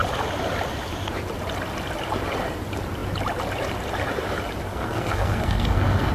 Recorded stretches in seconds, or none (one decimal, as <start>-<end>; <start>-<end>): 0.0-4.7